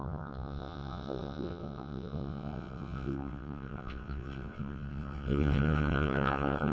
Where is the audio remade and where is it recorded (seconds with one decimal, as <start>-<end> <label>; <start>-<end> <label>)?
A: 0.0-6.7 remade

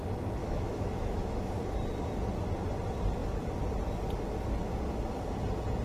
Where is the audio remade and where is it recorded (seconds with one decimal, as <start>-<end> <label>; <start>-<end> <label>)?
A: 0.0-0.4 recorded; 0.4-1.5 remade; 1.5-5.8 recorded

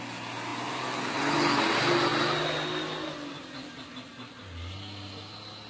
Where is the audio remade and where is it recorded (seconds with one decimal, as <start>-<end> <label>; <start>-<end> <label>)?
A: 0.0-5.7 recorded

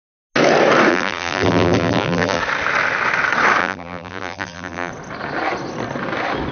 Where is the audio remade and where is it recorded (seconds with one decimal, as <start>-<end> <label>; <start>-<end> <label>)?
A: 0.0-0.9 recorded; 0.9-2.4 remade; 2.4-3.6 recorded; 3.6-4.9 remade; 4.9-6.5 recorded

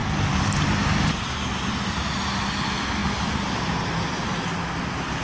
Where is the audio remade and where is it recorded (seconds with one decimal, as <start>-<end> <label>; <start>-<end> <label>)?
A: 0.0-5.2 recorded

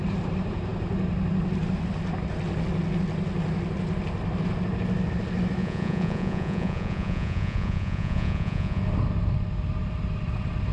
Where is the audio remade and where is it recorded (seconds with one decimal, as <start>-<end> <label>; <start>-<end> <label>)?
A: 0.0-5.6 recorded; 5.6-8.8 remade; 8.8-10.7 recorded

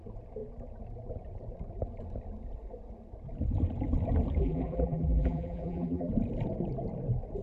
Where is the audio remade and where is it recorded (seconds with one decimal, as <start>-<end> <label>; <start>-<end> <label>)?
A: 0.0-4.4 recorded; 4.4-6.1 remade; 6.1-7.4 recorded